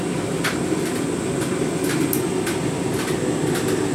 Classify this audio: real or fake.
real